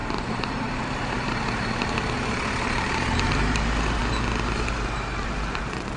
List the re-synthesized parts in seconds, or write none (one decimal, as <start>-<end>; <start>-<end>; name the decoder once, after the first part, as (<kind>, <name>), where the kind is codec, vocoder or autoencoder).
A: 0.0-3.6 (vocoder, BigVGAN v2)